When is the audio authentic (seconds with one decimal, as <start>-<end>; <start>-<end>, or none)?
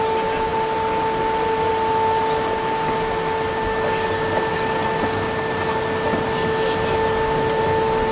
0.0-8.1